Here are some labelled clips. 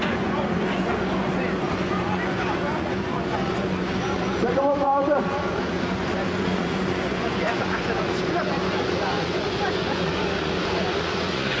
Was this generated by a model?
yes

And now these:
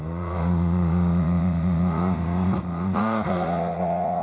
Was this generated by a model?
yes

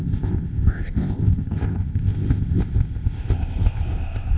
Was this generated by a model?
yes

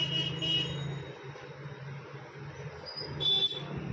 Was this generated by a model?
no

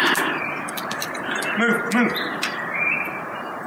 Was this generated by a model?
no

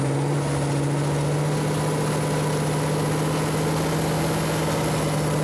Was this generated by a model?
no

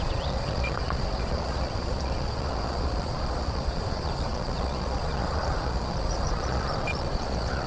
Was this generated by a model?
yes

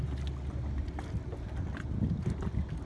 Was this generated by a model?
no